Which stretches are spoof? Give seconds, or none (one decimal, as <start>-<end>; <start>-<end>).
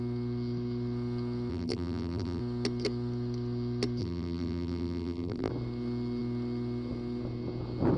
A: 1.5-2.4; 4.0-5.5